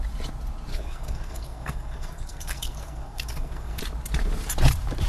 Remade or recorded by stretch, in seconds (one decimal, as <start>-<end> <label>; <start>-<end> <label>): 0.0-0.7 recorded; 0.7-3.8 remade; 3.8-5.1 recorded

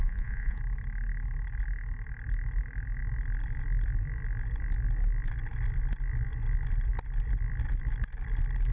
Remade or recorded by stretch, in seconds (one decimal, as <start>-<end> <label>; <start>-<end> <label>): 0.0-0.6 remade; 0.6-8.7 recorded

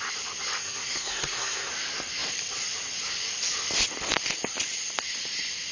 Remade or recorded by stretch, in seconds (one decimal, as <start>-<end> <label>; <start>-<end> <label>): 0.0-0.6 recorded; 0.6-1.7 remade; 1.7-5.7 recorded